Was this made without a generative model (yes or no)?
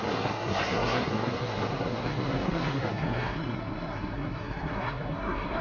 no